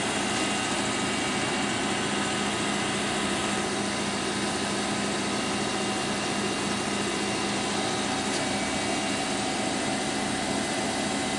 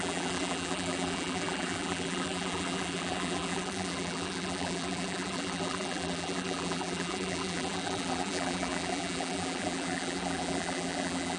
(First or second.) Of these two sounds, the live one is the first